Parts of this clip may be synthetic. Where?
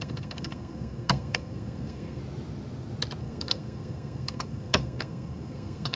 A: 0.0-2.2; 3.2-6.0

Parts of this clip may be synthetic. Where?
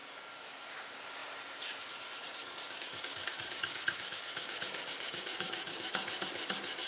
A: 0.0-0.7; 2.4-6.0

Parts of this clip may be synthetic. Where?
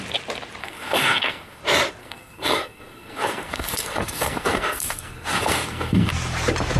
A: 0.6-1.6; 2.0-6.1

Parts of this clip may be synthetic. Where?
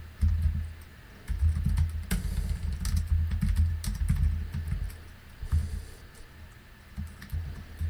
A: none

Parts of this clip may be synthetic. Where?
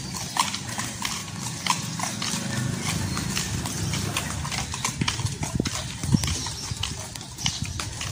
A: 6.0-7.5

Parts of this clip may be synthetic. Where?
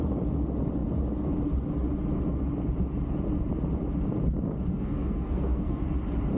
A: 4.7-5.8